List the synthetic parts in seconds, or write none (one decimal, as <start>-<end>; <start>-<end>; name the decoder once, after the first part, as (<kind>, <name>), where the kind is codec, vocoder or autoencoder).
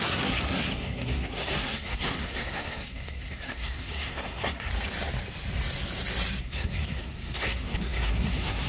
0.0-4.7 (codec, SNAC); 6.4-8.7